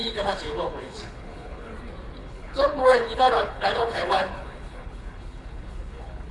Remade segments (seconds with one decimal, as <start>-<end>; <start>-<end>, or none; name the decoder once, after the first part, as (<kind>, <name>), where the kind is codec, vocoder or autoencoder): 0.0-1.7 (codec, HILCodec); 2.2-6.3

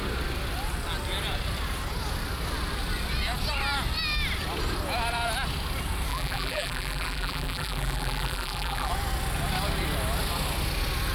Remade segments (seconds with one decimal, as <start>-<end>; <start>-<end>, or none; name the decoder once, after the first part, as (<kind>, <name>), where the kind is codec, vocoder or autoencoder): 6.1-8.9 (vocoder, BigVGAN v2)

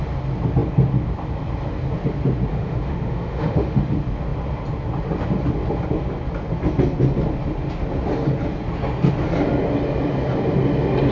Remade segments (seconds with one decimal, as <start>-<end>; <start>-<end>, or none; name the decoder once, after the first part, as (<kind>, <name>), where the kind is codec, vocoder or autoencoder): 2.5-3.8 (autoencoder, DAC-VAE)

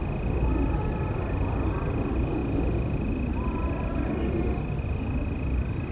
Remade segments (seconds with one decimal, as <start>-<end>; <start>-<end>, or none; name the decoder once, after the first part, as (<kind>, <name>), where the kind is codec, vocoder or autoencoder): none

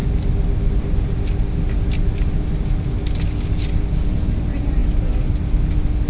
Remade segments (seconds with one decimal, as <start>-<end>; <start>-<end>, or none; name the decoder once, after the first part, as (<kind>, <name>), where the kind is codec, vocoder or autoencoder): none

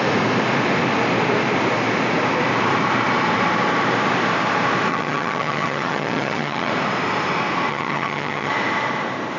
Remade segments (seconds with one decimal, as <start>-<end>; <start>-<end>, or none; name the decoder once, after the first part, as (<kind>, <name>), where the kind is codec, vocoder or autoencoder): 4.9-6.7 (vocoder, HiFi-GAN); 7.7-8.5

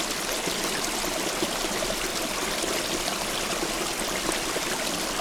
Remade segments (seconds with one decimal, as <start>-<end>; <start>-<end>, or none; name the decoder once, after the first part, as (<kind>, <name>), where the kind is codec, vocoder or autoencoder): none

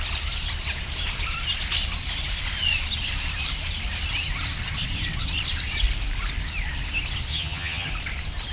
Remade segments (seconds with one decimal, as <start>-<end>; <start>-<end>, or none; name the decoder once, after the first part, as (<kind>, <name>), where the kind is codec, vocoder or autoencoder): 7.3-7.9 (vocoder, HiFi-GAN)